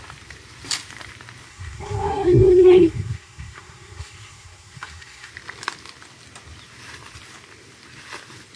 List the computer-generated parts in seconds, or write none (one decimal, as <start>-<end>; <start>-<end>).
1.5-5.3

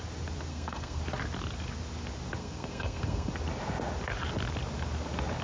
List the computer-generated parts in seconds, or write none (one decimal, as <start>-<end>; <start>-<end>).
0.5-1.0; 2.4-3.3

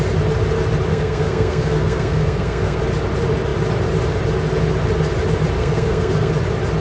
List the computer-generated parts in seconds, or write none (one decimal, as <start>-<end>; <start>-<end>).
0.9-2.8; 5.6-6.3